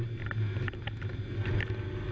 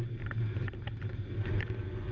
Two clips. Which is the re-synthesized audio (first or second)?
second